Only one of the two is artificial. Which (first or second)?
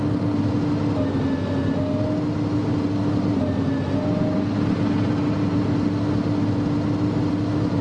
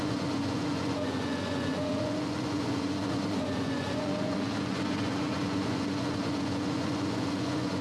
second